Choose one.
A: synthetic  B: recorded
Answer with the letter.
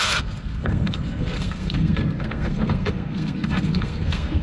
A